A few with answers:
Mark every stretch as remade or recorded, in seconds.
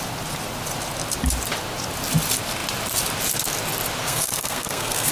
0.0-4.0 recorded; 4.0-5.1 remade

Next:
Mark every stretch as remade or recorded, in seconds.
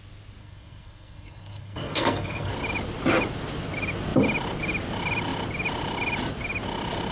0.0-0.4 recorded; 0.4-2.5 remade; 2.5-7.1 recorded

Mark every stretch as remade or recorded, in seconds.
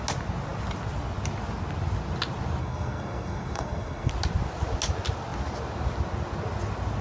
0.0-2.6 recorded; 2.6-4.1 remade; 4.1-7.0 recorded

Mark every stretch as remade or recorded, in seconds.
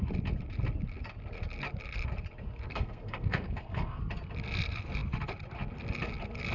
0.0-2.7 recorded; 2.7-4.0 remade; 4.0-6.5 recorded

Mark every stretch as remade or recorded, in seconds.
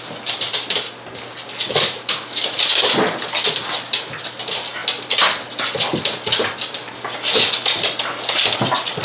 0.0-9.0 recorded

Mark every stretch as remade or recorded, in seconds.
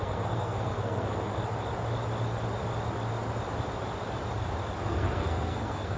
0.0-1.3 remade; 1.3-4.9 recorded; 4.9-6.0 remade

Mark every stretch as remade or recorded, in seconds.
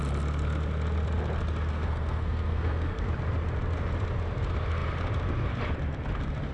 0.0-1.7 recorded; 1.7-3.1 remade; 3.1-6.5 recorded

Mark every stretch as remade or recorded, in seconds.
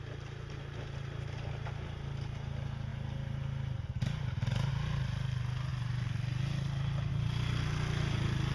0.0-8.5 recorded